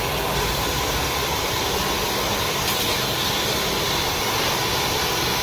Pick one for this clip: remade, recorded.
recorded